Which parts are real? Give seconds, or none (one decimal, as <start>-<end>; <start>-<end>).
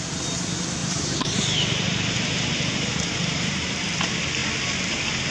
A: 0.0-0.8; 4.0-5.3